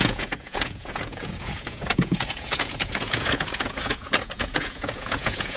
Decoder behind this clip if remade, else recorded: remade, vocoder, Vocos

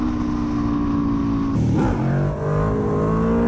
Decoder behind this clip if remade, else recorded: recorded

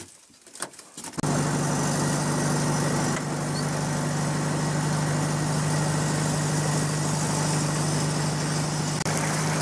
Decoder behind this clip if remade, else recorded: recorded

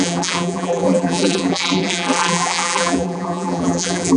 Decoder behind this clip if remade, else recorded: remade, vocoder, BigVGAN v2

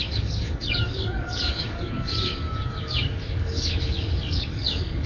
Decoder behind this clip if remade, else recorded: remade, codec, DAC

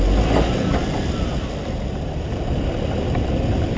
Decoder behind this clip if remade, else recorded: recorded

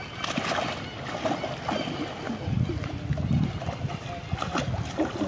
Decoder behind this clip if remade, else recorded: recorded